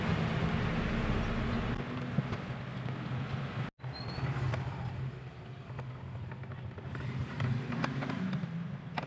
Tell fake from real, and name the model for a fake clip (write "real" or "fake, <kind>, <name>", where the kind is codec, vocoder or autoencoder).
real